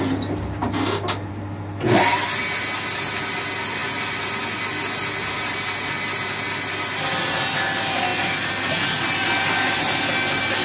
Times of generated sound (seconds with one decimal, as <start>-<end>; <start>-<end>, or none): none